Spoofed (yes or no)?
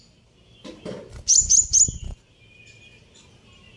no